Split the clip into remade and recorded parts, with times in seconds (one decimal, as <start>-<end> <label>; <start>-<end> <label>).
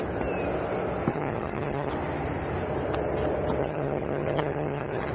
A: 0.0-1.1 recorded; 1.1-1.9 remade; 1.9-3.6 recorded; 3.6-5.1 remade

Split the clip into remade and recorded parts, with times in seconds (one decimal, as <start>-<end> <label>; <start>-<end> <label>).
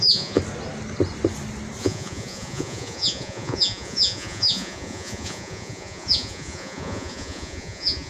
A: 0.0-0.4 remade; 0.4-1.8 recorded; 1.8-8.1 remade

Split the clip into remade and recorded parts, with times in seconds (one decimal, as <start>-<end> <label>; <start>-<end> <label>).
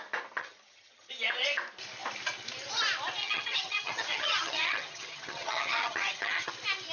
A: 0.0-0.4 recorded; 0.4-1.1 remade; 1.1-3.2 recorded; 3.2-6.5 remade; 6.5-6.9 recorded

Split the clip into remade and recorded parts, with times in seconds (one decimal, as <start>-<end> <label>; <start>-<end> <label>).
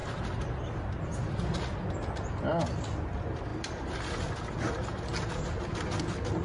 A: 0.0-6.4 recorded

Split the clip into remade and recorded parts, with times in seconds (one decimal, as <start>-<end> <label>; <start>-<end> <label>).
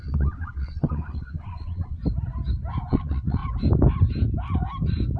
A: 0.0-2.0 remade; 2.0-2.9 recorded; 2.9-3.4 remade; 3.4-5.2 recorded